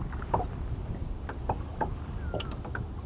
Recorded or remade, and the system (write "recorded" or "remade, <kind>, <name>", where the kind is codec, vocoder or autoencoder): recorded